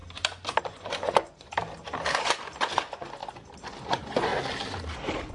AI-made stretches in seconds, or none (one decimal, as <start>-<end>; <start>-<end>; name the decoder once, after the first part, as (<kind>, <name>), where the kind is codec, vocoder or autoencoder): 0.6-1.5 (vocoder, Vocos); 2.1-3.2; 3.8-4.3